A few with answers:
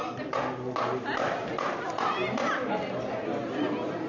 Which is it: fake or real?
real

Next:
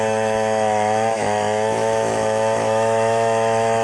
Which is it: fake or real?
fake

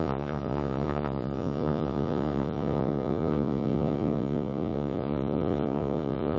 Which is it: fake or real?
fake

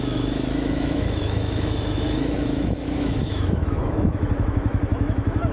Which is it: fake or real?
fake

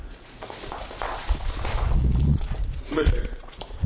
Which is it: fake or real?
fake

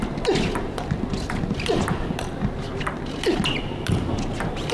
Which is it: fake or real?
real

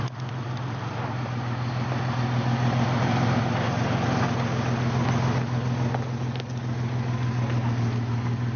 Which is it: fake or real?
real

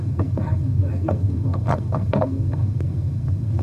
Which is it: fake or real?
fake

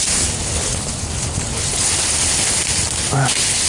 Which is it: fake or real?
real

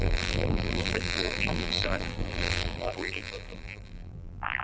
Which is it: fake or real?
fake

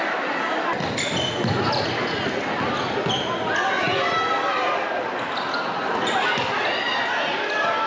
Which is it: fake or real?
real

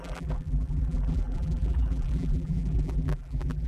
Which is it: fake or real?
fake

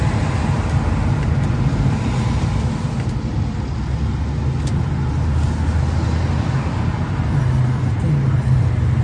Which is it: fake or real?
real